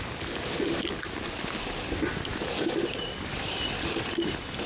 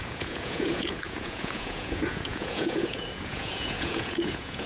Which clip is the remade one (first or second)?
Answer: second